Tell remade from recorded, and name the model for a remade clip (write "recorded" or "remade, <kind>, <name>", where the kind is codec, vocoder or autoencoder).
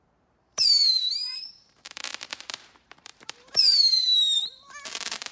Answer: remade, vocoder, BigVGAN v2